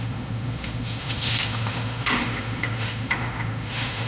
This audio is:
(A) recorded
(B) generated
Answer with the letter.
B